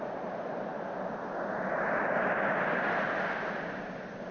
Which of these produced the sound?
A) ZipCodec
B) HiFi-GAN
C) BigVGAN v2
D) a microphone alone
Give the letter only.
D